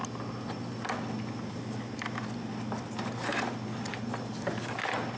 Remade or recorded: recorded